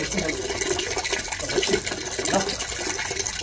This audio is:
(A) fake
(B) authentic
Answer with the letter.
B